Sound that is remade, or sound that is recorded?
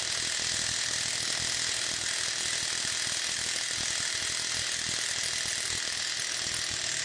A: recorded